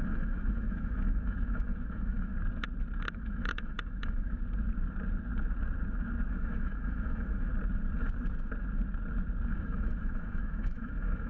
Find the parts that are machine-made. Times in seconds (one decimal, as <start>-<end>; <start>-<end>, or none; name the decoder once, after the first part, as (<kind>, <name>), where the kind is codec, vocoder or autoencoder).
0.0-2.3 (autoencoder, DAC-VAE); 3.1-4.4; 6.3-7.5; 9.5-11.3